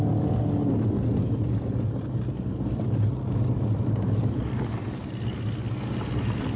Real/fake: real